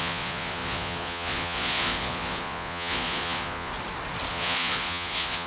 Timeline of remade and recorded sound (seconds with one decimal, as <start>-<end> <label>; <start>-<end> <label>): 0.0-3.7 remade; 3.7-4.3 recorded; 4.3-5.5 remade